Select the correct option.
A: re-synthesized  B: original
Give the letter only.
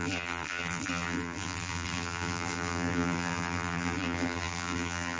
A